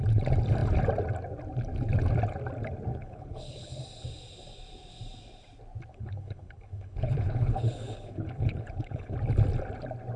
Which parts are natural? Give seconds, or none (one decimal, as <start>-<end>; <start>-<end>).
0.0-2.9; 3.8-5.9; 9.1-10.2